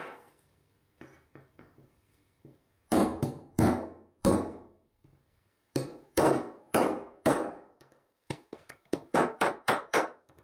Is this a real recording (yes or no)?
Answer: no